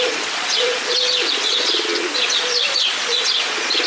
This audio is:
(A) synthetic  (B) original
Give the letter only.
A